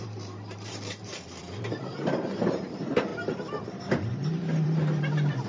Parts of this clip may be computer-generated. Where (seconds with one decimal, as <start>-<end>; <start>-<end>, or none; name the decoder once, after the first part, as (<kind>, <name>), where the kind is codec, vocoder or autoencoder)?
0.0-3.1 (vocoder, BigVGAN v2); 3.8-5.5